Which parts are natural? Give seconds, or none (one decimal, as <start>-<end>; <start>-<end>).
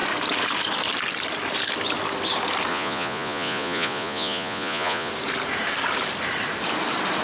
0.0-2.7; 5.1-7.2